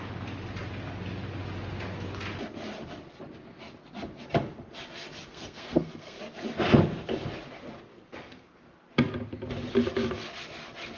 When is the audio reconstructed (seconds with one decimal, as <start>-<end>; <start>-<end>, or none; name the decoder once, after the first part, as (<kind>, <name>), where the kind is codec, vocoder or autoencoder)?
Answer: 5.3-6.2 (codec, SNAC); 7.9-8.6